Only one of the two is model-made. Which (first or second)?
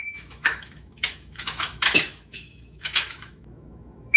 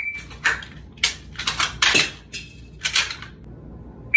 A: first